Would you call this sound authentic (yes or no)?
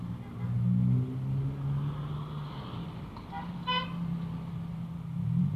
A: yes